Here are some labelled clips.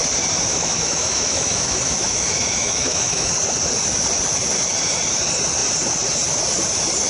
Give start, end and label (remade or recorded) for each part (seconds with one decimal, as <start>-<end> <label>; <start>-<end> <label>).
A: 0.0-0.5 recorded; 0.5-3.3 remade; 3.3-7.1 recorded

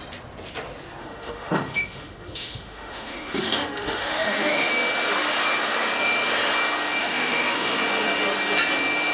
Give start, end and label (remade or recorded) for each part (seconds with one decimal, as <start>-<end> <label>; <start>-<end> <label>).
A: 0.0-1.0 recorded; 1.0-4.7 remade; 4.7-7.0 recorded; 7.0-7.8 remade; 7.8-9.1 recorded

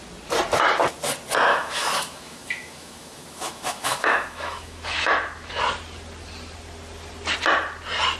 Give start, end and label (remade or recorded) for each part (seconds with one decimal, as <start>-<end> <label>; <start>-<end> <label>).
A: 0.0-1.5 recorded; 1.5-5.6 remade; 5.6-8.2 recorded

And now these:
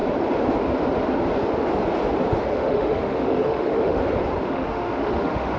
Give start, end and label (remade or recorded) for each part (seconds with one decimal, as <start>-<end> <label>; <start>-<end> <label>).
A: 0.0-2.5 recorded; 2.5-4.0 remade; 4.0-4.5 recorded; 4.5-5.6 remade

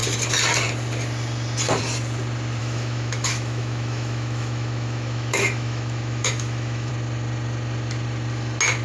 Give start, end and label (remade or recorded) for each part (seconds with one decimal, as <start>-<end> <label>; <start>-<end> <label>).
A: 0.0-2.6 recorded; 2.6-6.9 remade; 6.9-8.8 recorded

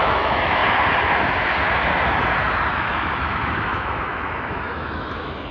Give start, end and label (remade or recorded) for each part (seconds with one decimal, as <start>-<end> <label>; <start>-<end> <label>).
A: 0.0-0.6 remade; 0.6-2.7 recorded; 2.7-5.5 remade

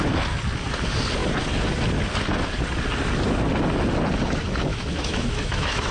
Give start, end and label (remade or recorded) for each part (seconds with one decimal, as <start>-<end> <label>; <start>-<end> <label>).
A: 0.0-4.7 recorded; 4.7-5.9 remade

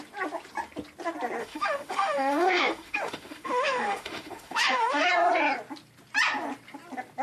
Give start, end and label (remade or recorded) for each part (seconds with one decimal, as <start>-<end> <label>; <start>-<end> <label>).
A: 0.0-1.4 recorded; 1.4-5.1 remade; 5.1-7.2 recorded